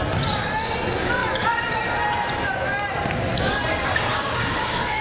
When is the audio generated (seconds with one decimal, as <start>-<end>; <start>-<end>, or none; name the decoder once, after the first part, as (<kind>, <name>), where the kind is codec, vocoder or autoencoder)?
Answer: 4.1-5.0 (codec, DAC)